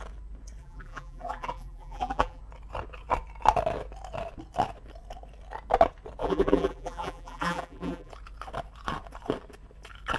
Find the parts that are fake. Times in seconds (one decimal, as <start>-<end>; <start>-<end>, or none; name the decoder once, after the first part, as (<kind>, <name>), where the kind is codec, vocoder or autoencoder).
0.6-2.4 (vocoder, BigVGAN v2); 6.2-8.1